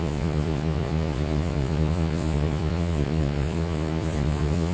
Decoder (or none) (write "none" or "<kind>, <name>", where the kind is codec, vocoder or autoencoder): vocoder, Vocos